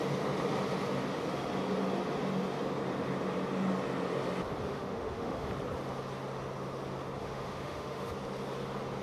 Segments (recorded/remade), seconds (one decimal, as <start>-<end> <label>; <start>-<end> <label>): 0.0-4.7 recorded; 4.7-5.5 remade; 5.5-7.2 recorded; 7.2-8.1 remade; 8.1-9.0 recorded